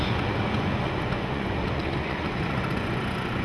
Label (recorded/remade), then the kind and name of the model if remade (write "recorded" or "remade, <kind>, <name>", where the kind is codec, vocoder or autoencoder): remade, vocoder, Vocos